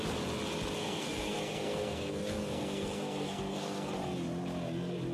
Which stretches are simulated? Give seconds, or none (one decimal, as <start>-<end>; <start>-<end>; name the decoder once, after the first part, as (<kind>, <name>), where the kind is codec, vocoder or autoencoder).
0.8-3.9 (codec, SNAC)